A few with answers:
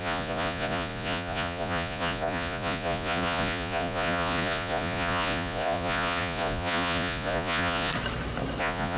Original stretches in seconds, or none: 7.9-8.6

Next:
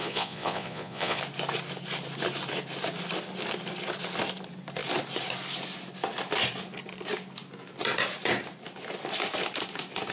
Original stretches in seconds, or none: 1.2-10.1

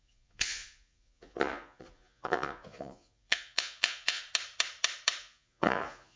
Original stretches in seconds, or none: 4.2-5.2

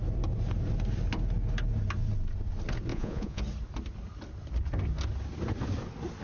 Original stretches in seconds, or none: 0.0-2.9; 3.4-6.2

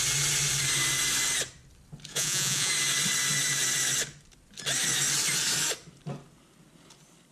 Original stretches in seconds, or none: 0.0-2.1; 2.7-7.3

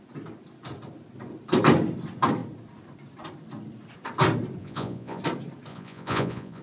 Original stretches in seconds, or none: 0.0-4.6; 5.2-5.7

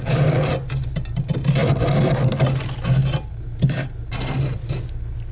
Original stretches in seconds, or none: 0.0-5.3